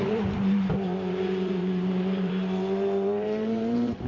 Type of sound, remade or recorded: remade